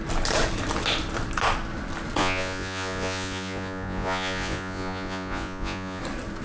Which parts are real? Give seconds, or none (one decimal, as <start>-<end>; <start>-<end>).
0.0-2.2; 6.0-6.4